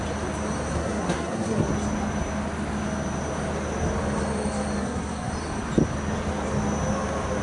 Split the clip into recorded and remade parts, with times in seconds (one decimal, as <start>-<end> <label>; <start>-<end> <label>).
0.0-0.7 recorded; 0.7-1.7 remade; 1.7-4.8 recorded; 4.8-5.3 remade; 5.3-7.4 recorded